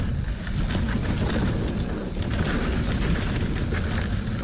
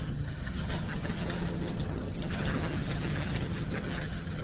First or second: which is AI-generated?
second